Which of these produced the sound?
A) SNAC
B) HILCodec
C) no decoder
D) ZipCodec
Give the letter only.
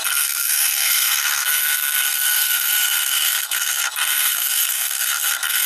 A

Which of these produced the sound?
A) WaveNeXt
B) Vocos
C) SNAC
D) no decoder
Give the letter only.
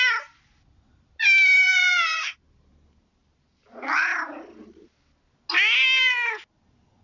D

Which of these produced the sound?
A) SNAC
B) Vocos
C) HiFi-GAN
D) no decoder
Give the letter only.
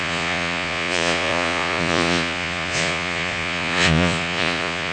B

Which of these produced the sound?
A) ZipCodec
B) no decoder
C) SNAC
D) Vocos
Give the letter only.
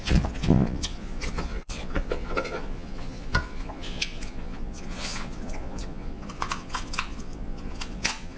D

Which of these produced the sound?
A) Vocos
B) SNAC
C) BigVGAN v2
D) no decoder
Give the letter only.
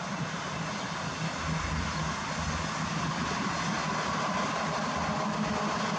D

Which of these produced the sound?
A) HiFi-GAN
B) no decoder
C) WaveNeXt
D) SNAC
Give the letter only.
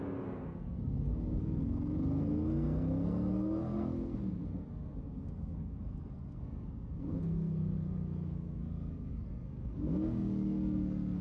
D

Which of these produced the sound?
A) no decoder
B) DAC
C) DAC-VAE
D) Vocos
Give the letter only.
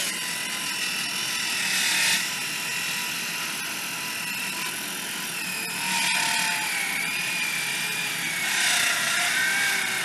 A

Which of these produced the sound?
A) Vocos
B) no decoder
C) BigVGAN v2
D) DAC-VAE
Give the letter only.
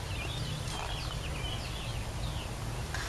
B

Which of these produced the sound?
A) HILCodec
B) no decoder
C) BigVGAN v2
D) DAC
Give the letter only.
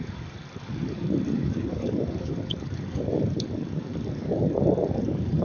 D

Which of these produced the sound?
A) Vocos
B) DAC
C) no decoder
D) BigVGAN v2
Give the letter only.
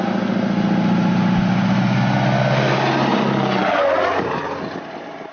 C